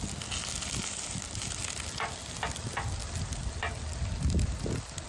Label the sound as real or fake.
real